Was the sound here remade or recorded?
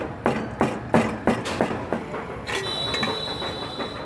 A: recorded